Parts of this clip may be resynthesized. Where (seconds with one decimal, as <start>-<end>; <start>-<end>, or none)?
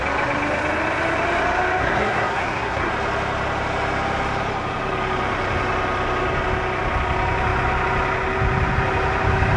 1.8-2.9